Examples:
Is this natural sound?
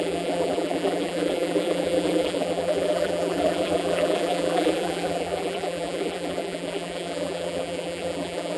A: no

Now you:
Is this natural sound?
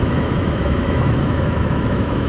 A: no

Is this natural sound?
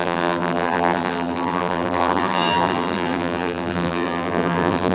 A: no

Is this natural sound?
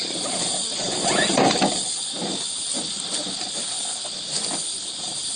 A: yes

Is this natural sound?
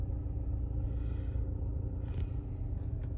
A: yes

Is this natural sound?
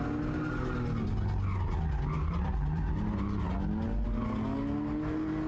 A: yes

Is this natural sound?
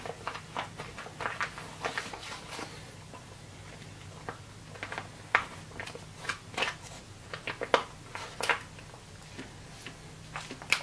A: yes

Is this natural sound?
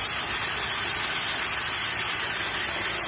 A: yes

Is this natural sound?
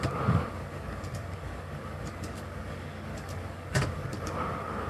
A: no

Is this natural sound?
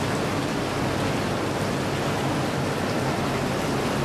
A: yes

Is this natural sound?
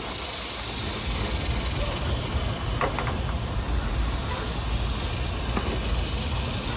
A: yes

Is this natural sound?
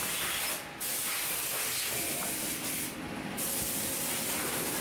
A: yes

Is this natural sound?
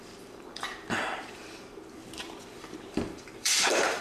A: no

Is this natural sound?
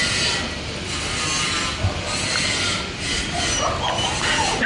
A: yes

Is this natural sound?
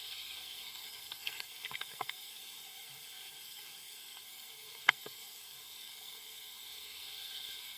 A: no